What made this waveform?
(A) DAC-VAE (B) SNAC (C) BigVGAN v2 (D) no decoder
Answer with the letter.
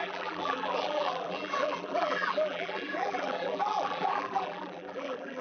C